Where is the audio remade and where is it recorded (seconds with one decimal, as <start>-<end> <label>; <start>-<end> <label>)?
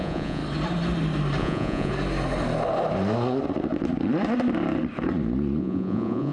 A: 0.0-0.4 remade; 0.4-1.4 recorded; 1.4-1.9 remade; 1.9-5.6 recorded; 5.6-6.3 remade